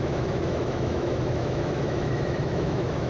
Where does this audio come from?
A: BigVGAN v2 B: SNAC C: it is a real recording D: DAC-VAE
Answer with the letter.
D